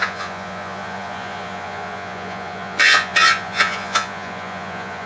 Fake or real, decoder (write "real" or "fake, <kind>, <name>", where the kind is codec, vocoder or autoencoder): fake, vocoder, Vocos